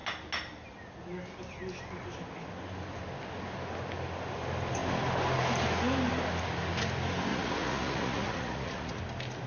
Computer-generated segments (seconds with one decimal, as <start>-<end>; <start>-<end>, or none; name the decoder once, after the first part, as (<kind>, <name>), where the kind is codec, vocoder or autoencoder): 7.3-9.0 (vocoder, Vocos)

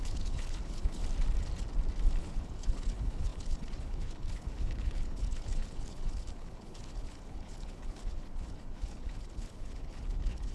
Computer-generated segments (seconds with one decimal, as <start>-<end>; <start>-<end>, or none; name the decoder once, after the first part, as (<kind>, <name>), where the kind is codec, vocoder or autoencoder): 0.0-1.0 (codec, HILCodec); 2.2-10.5

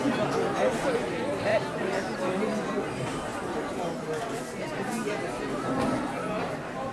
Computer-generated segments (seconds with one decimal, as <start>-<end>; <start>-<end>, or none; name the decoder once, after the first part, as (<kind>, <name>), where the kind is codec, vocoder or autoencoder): none

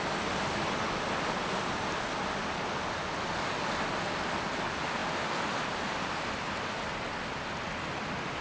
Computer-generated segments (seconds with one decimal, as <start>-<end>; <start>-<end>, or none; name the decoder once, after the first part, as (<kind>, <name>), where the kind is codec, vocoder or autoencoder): none

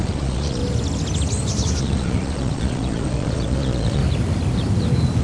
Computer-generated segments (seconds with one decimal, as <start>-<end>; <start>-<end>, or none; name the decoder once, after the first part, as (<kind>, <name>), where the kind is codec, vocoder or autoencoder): 0.0-0.6 (vocoder, Vocos); 1.8-4.0

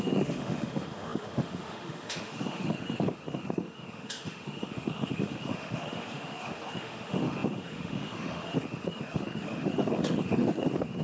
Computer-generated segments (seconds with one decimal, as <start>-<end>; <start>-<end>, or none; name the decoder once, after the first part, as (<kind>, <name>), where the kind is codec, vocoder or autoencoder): 0.0-11.0 (autoencoder, DAC-VAE)